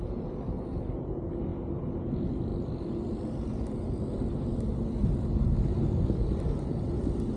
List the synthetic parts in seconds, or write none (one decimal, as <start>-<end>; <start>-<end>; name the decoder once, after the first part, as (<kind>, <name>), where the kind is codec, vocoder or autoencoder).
none